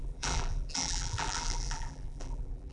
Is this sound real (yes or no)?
no